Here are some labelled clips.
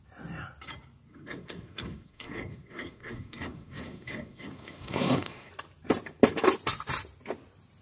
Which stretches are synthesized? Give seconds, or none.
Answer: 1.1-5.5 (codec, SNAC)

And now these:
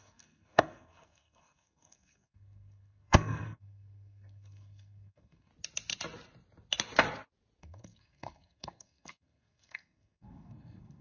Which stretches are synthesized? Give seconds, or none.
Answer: 0.0-5.5 (codec, SNAC); 7.6-11.0